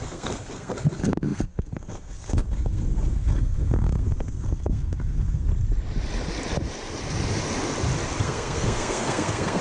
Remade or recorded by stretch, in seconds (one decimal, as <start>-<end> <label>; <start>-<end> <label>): 0.0-5.5 remade; 5.5-8.2 recorded; 8.2-9.6 remade